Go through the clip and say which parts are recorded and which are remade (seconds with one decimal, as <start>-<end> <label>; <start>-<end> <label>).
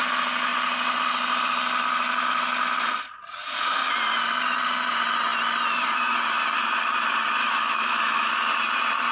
0.0-7.4 recorded; 7.4-8.3 remade; 8.3-9.1 recorded